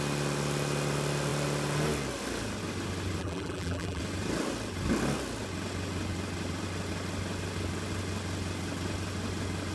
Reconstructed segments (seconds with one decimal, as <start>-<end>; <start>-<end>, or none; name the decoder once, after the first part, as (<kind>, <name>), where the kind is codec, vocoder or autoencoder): 3.2-4.0 (vocoder, BigVGAN v2)